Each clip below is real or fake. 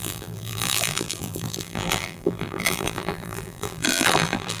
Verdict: fake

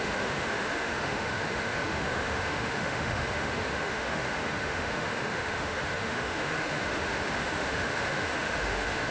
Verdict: fake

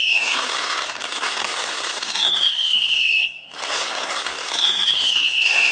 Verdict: fake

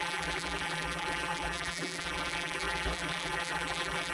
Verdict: fake